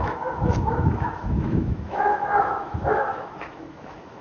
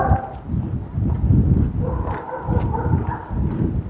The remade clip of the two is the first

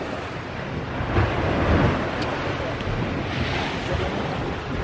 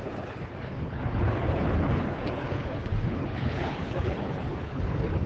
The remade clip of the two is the second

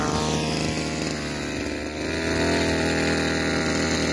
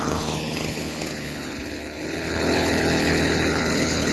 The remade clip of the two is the second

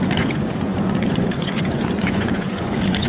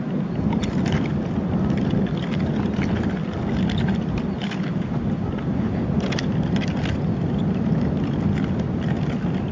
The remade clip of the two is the first